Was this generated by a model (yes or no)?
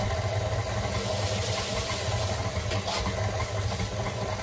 no